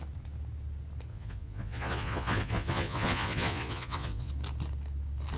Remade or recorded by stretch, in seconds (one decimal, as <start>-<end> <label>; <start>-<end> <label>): 0.0-1.1 recorded; 1.1-4.3 remade; 4.3-5.4 recorded